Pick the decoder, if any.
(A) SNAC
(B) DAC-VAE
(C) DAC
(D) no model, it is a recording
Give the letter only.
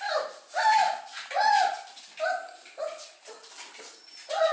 D